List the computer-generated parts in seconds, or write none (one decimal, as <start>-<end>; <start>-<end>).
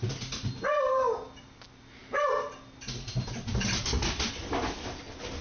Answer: none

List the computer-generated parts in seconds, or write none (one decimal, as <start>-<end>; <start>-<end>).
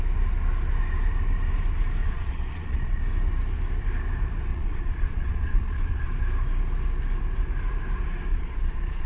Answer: 2.0-3.0; 4.5-6.1; 8.3-9.1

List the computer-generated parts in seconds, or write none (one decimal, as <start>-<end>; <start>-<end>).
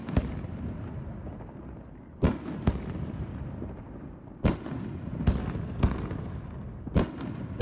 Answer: none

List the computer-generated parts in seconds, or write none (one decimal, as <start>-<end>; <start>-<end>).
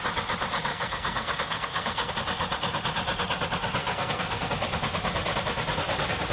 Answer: 0.7-2.1; 3.8-4.5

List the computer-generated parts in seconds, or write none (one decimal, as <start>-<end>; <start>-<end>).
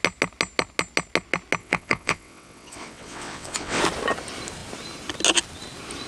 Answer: 1.6-3.8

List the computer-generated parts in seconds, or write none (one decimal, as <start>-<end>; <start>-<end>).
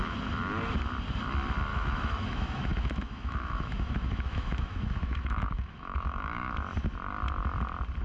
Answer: 1.7-6.5